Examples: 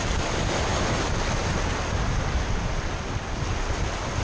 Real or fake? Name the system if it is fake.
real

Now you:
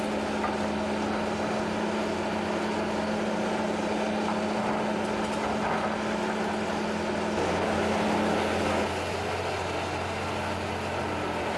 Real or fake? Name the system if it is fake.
real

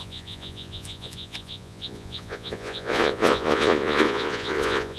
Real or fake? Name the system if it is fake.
fake, vocoder, Vocos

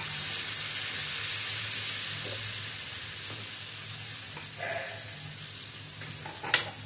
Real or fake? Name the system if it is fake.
real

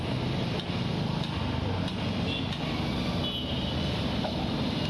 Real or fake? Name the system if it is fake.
real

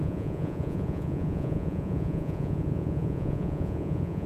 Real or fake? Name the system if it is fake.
fake, vocoder, Vocos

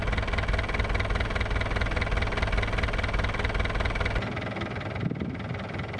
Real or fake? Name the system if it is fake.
real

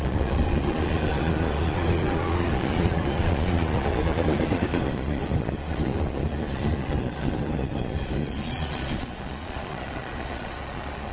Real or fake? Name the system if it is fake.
fake, vocoder, Vocos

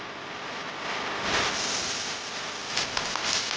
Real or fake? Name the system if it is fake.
real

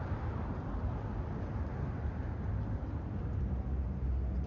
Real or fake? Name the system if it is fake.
real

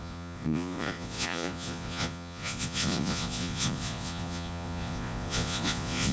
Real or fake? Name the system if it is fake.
fake, vocoder, Vocos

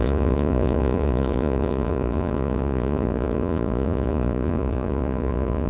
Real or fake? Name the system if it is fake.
fake, vocoder, Vocos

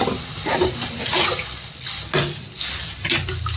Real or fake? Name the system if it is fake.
real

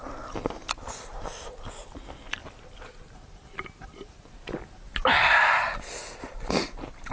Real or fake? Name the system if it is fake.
real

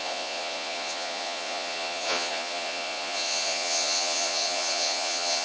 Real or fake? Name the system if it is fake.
fake, vocoder, Vocos